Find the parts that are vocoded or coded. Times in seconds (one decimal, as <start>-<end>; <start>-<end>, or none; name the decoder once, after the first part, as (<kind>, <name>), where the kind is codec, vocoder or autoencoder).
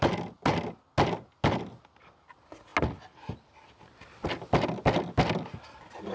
none